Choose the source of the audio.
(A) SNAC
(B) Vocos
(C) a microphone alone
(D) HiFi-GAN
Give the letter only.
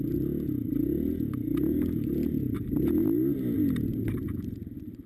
C